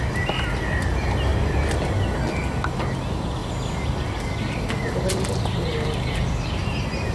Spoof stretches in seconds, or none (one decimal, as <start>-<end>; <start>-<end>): none